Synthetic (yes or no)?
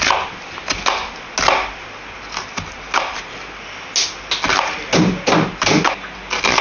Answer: no